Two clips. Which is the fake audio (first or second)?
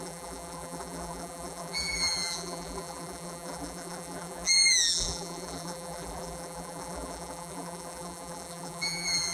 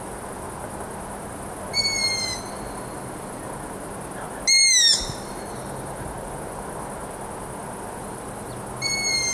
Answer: first